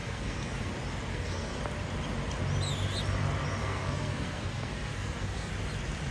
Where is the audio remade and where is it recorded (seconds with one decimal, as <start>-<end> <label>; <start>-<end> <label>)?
0.0-0.7 remade; 0.7-1.1 recorded; 1.1-1.6 remade; 1.6-3.6 recorded; 3.6-5.5 remade; 5.5-6.1 recorded

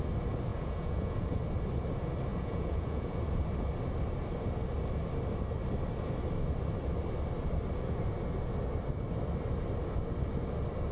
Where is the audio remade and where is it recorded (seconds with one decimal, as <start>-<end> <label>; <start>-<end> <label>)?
0.0-0.5 recorded; 0.5-1.4 remade; 1.4-2.3 recorded; 2.3-3.2 remade; 3.2-10.9 recorded